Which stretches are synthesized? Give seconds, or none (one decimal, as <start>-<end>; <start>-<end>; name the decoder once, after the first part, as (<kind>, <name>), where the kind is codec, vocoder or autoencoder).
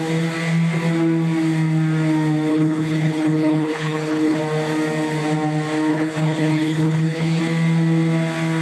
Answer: 2.5-4.4 (codec, HILCodec); 5.9-7.4